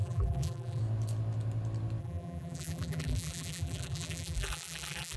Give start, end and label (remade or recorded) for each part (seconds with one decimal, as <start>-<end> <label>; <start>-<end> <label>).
0.0-0.8 remade; 0.8-2.0 recorded; 2.0-5.2 remade